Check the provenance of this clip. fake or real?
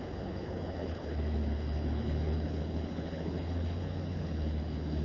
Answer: fake